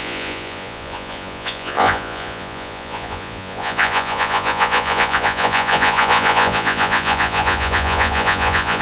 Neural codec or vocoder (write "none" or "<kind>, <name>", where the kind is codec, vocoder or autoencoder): vocoder, Vocos